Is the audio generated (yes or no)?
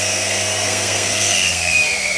yes